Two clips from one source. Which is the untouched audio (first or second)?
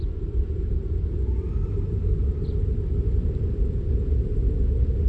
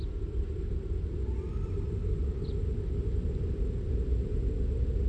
second